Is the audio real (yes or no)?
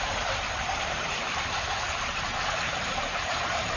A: no